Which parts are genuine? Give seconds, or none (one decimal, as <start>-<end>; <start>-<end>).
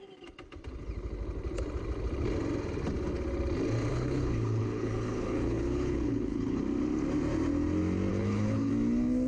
0.0-3.9; 6.6-8.1; 8.7-9.3